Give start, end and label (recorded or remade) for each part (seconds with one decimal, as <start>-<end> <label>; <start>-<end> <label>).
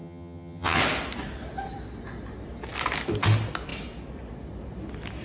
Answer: 0.0-0.8 remade; 0.8-5.2 recorded